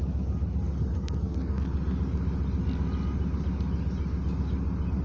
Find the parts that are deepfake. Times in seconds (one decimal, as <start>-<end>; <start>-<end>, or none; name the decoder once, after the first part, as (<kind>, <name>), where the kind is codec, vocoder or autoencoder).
0.9-1.6 (codec, SNAC)